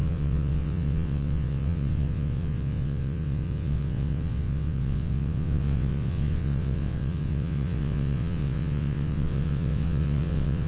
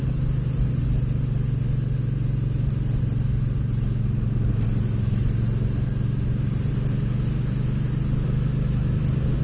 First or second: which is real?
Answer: second